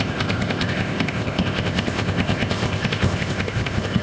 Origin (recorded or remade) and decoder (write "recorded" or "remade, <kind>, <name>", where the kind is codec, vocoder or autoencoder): remade, codec, ZipCodec